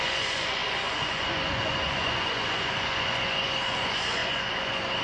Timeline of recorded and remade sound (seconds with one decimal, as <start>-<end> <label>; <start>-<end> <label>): 0.0-5.0 remade